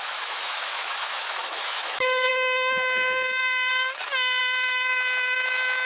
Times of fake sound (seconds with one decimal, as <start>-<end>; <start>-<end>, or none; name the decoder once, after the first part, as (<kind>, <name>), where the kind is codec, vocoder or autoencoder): 0.0-3.7 (autoencoder, DAC-VAE); 4.4-5.9